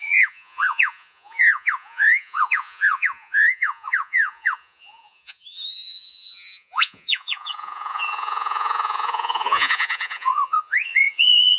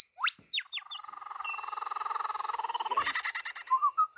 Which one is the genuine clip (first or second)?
second